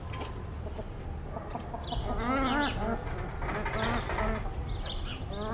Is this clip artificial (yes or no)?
no